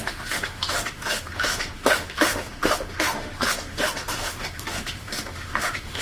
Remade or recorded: remade